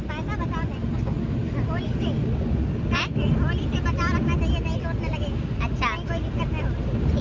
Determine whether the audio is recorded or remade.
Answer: recorded